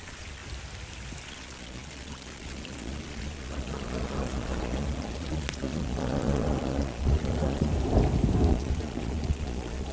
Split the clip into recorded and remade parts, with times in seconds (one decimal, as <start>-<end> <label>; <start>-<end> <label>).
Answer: 0.0-0.4 remade; 0.4-1.2 recorded; 1.2-7.7 remade; 7.7-8.5 recorded; 8.5-9.9 remade